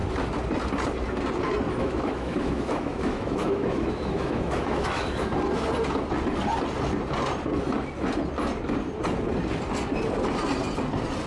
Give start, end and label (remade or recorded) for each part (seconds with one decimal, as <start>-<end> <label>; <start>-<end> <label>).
0.0-1.8 recorded; 1.8-5.3 remade; 5.3-11.3 recorded